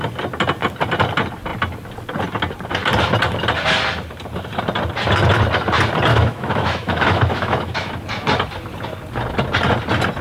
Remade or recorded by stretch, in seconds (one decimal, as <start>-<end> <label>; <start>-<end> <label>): 0.0-6.1 recorded; 6.1-7.9 remade; 7.9-10.2 recorded